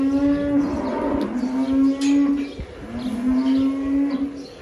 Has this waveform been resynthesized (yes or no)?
no